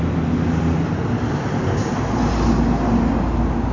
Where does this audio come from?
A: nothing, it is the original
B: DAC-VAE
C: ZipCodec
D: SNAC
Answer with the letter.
A